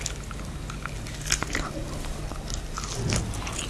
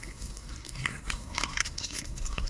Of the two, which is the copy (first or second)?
second